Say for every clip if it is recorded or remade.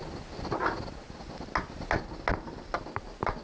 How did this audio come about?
recorded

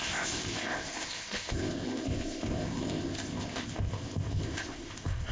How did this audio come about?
remade